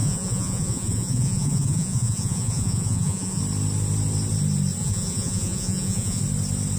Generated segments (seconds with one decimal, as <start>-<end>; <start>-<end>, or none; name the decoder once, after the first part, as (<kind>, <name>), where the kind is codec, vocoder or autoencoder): 0.0-3.4 (vocoder, Vocos); 4.8-6.2